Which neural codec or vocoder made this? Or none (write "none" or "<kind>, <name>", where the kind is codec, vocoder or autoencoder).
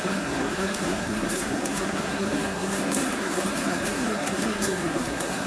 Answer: codec, SNAC